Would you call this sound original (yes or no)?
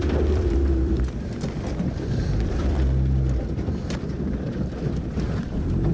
no